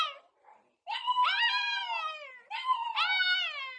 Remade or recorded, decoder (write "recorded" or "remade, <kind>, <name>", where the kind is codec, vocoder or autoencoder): recorded